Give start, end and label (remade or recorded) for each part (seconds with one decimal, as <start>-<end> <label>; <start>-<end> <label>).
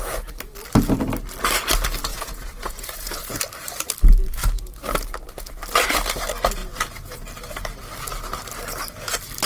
0.0-2.1 recorded; 2.1-3.4 remade; 3.4-9.5 recorded